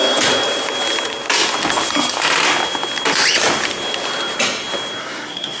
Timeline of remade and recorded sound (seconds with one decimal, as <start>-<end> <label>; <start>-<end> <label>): 0.0-5.0 recorded; 5.0-5.6 remade